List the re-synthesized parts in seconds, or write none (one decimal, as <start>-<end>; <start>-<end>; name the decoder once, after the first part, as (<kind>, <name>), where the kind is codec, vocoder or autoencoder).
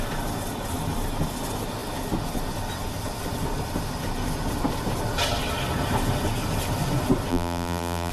7.3-8.1 (vocoder, BigVGAN v2)